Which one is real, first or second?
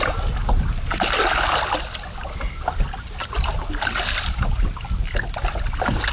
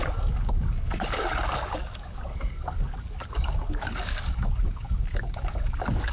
first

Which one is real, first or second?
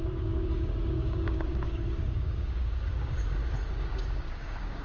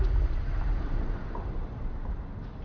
second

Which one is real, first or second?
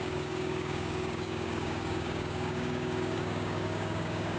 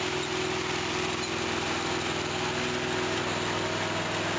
second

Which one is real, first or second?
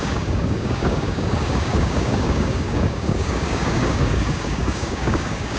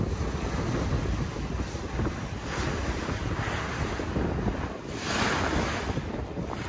second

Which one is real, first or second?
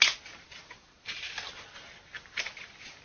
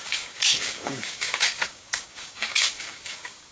first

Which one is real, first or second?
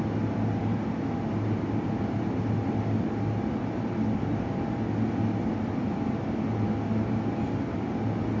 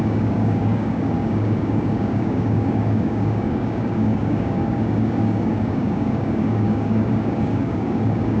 first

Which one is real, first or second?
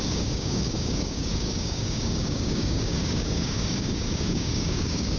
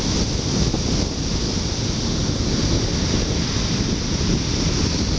second